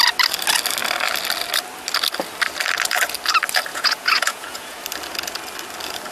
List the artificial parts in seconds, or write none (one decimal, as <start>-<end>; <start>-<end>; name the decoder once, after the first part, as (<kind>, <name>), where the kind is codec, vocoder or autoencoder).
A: 3.7-4.8 (vocoder, Vocos)